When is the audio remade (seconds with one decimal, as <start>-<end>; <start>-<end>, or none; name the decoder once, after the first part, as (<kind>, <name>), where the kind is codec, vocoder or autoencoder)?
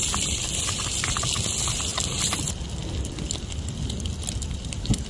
0.0-5.1 (vocoder, BigVGAN v2)